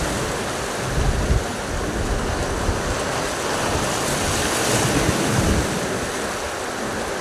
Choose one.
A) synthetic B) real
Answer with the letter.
B